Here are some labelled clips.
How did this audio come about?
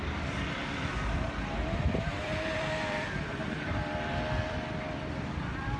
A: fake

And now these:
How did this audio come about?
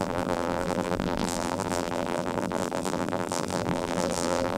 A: fake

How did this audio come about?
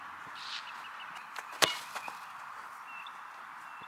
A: real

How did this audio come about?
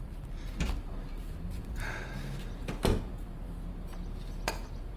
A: fake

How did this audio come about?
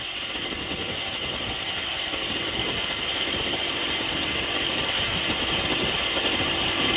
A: real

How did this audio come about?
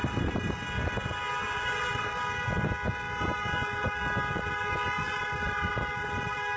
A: real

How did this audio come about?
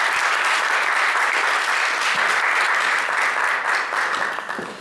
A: real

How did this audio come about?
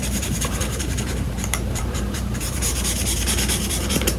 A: fake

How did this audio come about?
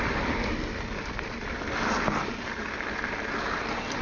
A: real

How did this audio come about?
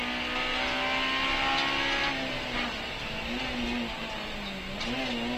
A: real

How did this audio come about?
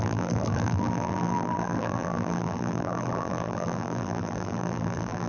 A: fake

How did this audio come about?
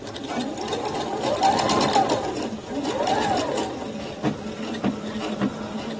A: real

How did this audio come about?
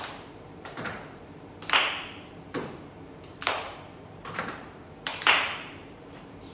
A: fake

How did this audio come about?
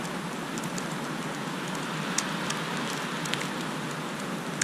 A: real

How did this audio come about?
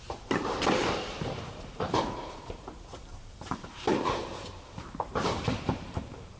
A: fake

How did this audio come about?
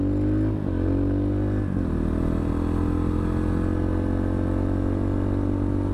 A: real